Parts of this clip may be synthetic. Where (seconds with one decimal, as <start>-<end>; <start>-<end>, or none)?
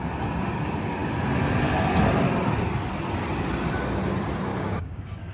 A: 4.5-5.3